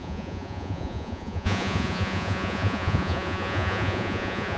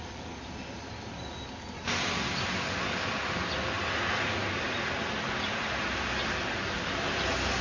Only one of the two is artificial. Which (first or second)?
first